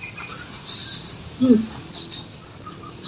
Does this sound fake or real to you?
real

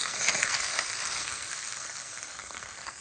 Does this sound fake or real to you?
fake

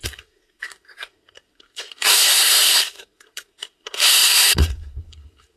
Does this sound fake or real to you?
fake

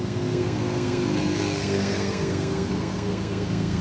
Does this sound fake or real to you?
fake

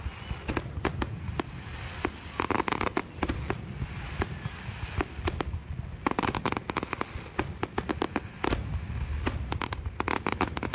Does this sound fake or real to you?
real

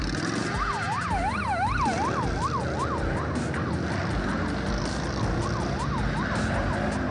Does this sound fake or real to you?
real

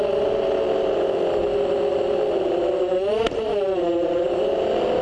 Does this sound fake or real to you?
real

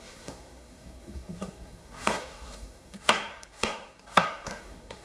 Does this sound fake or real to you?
fake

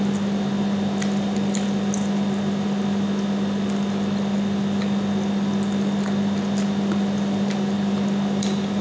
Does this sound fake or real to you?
real